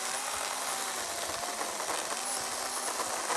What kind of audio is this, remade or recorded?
recorded